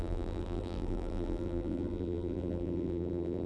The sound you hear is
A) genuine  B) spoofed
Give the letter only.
B